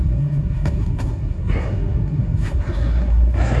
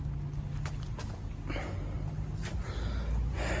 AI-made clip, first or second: first